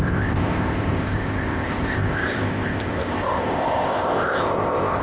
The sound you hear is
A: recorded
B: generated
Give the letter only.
B